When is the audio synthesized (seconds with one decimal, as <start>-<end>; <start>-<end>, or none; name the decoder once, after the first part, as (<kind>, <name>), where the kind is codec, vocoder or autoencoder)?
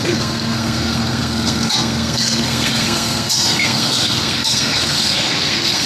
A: 0.0-5.9 (codec, SNAC)